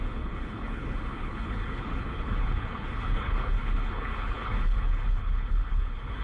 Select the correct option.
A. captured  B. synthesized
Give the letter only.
B